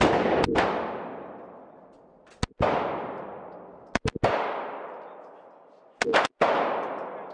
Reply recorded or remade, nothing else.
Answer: recorded